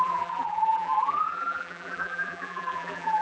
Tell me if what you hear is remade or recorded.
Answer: remade